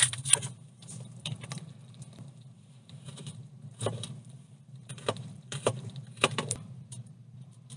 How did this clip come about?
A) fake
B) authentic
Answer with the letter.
A